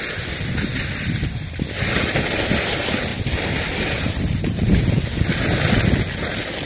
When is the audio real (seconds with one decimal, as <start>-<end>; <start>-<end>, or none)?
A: 0.0-6.7